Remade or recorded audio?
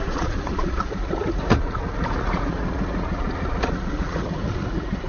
remade